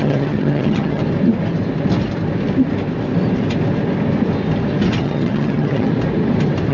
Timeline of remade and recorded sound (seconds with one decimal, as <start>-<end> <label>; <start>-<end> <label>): 0.0-1.0 remade; 1.0-5.0 recorded; 5.0-5.9 remade; 5.9-6.7 recorded